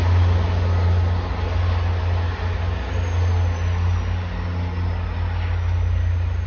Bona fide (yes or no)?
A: yes